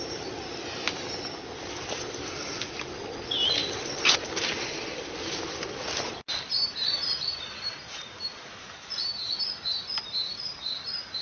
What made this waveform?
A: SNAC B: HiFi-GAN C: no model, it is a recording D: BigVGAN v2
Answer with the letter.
C